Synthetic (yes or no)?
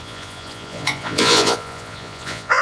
yes